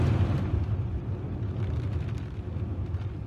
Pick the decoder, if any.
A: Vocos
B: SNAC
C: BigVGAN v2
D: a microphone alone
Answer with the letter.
D